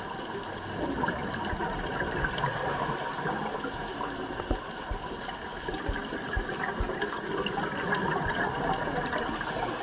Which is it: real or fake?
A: real